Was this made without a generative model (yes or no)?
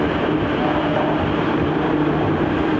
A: no